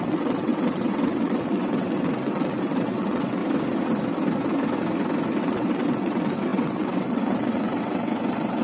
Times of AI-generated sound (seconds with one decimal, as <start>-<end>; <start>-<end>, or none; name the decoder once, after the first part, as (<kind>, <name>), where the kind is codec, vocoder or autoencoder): 0.0-3.4 (vocoder, WaveNeXt); 5.4-8.6